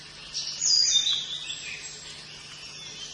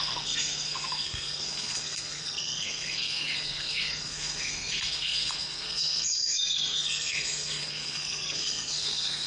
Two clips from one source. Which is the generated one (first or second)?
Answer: second